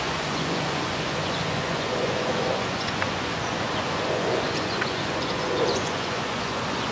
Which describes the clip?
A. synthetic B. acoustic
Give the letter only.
A